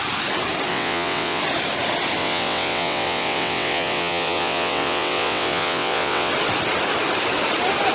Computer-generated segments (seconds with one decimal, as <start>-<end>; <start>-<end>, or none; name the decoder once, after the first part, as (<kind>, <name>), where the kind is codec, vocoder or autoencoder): 0.7-1.4 (vocoder, WaveNeXt); 2.2-6.3